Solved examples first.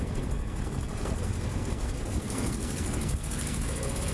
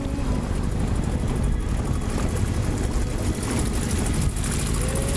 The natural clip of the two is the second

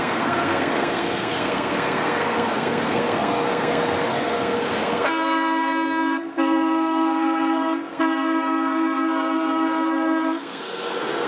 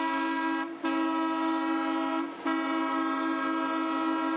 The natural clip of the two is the second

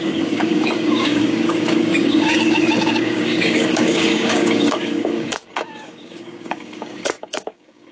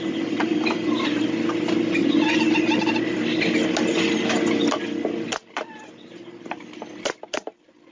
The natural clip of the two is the second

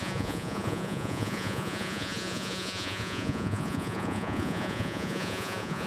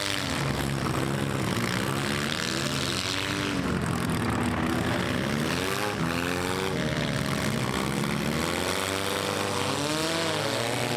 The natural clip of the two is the second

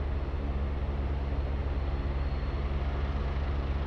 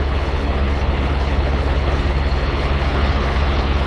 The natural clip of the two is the first